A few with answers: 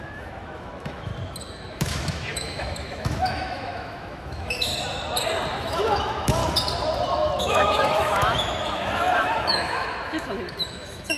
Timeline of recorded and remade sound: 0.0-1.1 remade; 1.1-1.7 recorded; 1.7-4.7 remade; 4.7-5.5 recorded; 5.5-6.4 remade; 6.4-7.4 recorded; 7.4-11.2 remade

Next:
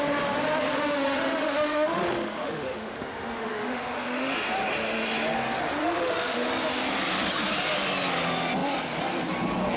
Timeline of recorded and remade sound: 0.0-0.7 recorded; 0.7-4.3 remade; 4.3-5.8 recorded; 5.8-6.5 remade; 6.5-9.8 recorded

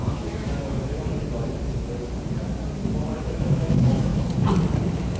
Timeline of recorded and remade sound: 0.0-1.1 remade; 1.1-3.2 recorded; 3.2-4.1 remade; 4.1-5.2 recorded

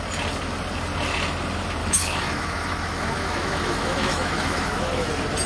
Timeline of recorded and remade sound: 0.0-1.8 recorded; 1.8-5.1 remade; 5.1-5.5 recorded